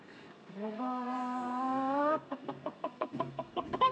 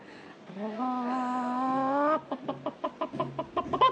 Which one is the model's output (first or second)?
first